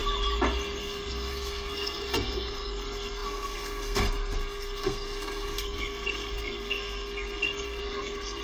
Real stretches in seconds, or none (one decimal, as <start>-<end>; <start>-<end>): 0.0-0.8

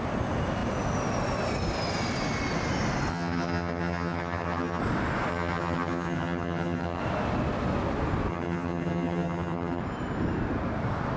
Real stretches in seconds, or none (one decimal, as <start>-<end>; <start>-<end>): 0.0-3.1; 4.8-5.3; 7.0-8.3; 9.8-11.2

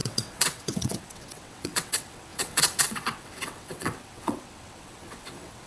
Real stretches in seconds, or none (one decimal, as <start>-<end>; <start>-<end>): none

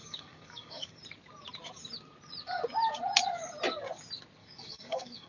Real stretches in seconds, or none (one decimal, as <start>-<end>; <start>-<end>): 1.0-4.4

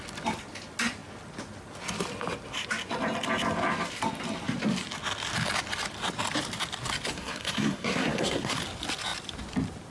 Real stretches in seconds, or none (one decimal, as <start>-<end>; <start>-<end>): 0.0-7.1; 8.6-9.9

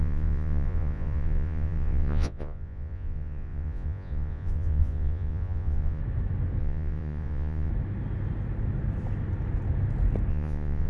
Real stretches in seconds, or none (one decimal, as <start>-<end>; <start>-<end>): 6.0-6.6; 7.7-10.3

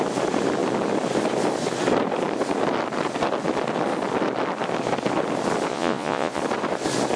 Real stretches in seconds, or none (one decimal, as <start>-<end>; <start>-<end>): 0.0-5.7; 6.4-7.2